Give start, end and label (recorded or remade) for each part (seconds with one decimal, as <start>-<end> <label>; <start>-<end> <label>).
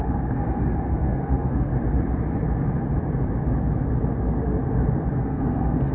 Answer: 0.0-1.7 remade; 1.7-5.2 recorded; 5.2-5.9 remade